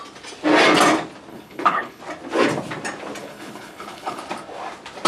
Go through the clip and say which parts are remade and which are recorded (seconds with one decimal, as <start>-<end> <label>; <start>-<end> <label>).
0.0-1.3 recorded; 1.3-2.0 remade; 2.0-3.2 recorded; 3.2-4.2 remade; 4.2-5.1 recorded